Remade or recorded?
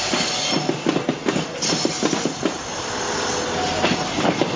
recorded